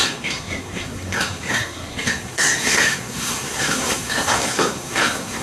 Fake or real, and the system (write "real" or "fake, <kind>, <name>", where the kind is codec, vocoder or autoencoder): fake, codec, SNAC